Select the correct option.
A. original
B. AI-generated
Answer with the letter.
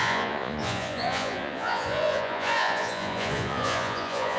B